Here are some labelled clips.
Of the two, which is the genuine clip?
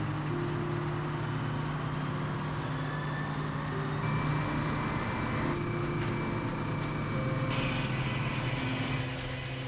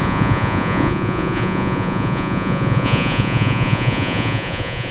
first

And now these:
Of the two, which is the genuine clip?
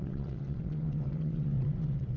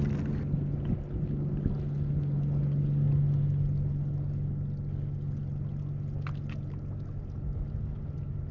second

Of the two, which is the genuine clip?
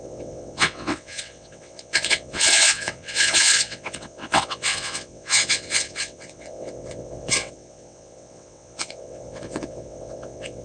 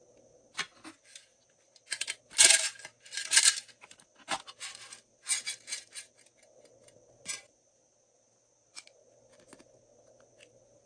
second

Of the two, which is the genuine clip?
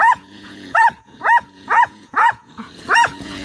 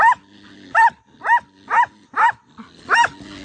second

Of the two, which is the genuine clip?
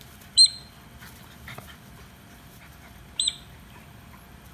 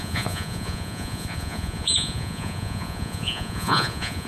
first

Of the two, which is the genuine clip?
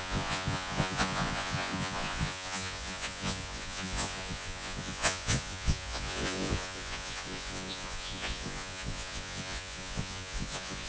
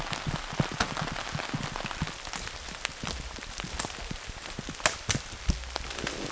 second